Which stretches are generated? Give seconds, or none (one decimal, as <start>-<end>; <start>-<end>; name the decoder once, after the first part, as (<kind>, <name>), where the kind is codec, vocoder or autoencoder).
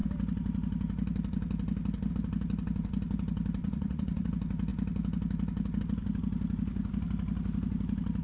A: 3.6-4.3 (vocoder, Vocos)